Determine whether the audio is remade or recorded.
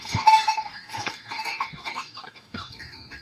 remade